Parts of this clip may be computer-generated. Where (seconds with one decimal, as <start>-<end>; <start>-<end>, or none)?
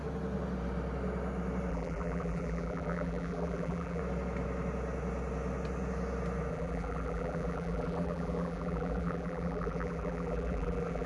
1.7-4.0; 6.5-11.1